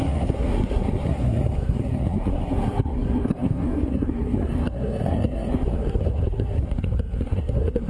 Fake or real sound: fake